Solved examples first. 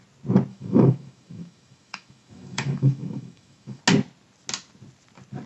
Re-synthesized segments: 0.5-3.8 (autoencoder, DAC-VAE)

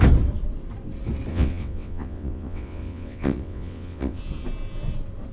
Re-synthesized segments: 1.3-4.2 (vocoder, WaveNeXt)

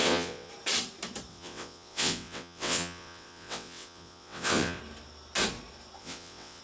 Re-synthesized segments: 0.0-0.5 (vocoder, WaveNeXt); 1.3-4.8; 6.0-6.6

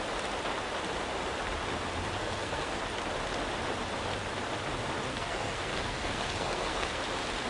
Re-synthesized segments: 2.2-2.8 (codec, SNAC); 5.1-7.0

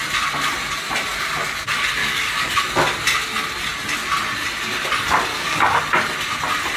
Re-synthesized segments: 2.0-2.6 (codec, DAC); 5.3-5.8

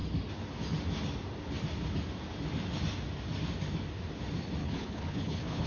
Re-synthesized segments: 4.6-5.7 (codec, HILCodec)

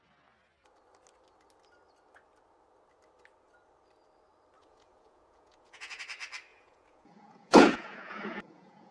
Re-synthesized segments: 4.6-6.0 (vocoder, Vocos); 6.5-8.9